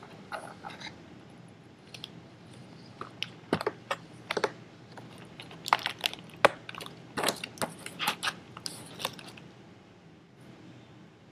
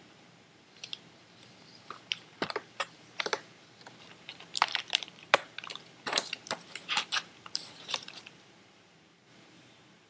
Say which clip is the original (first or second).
first